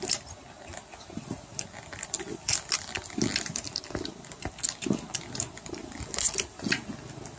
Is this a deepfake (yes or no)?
no